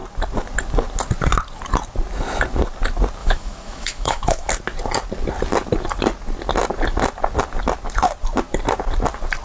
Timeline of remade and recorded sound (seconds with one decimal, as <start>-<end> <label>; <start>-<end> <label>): 0.0-3.2 recorded; 3.2-4.5 remade; 4.5-9.4 recorded